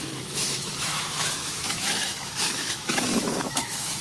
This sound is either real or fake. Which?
fake